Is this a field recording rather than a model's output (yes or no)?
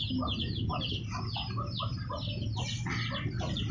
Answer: yes